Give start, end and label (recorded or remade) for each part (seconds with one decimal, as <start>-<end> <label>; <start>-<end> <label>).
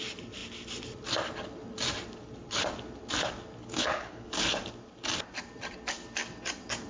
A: 0.0-3.6 recorded; 3.6-4.3 remade; 4.3-6.9 recorded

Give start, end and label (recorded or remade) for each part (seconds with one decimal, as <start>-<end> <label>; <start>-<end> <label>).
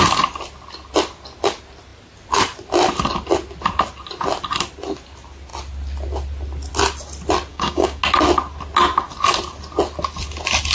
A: 0.0-7.5 recorded; 7.5-8.0 remade; 8.0-10.7 recorded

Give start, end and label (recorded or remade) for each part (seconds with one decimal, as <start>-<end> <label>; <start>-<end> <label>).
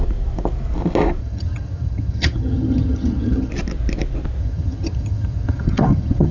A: 0.0-1.2 recorded; 1.2-3.5 remade; 3.5-4.4 recorded; 4.4-6.3 remade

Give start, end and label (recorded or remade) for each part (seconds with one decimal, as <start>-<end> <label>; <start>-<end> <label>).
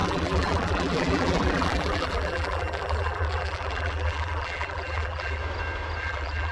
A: 0.0-5.4 remade; 5.4-6.0 recorded; 6.0-6.5 remade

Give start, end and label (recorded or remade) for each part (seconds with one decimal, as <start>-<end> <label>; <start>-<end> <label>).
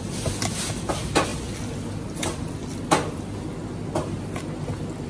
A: 0.0-1.3 remade; 1.3-4.4 recorded; 4.4-5.1 remade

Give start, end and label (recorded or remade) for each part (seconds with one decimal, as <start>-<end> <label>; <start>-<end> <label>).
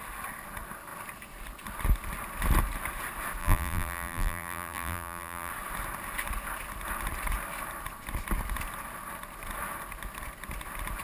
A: 0.0-3.4 recorded; 3.4-5.5 remade; 5.5-11.0 recorded